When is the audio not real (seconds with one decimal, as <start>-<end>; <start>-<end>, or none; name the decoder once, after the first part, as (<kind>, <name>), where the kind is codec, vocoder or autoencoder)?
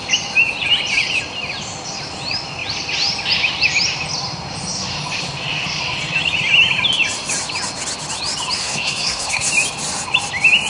8.6-9.5 (codec, SNAC)